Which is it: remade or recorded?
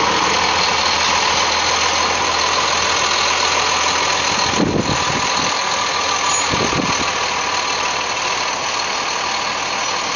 recorded